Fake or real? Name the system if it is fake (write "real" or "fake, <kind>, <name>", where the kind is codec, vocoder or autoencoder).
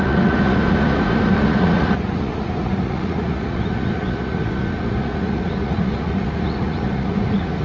fake, vocoder, Vocos